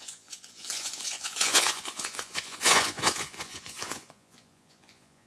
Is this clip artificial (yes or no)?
yes